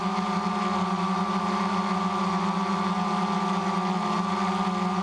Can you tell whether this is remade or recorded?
recorded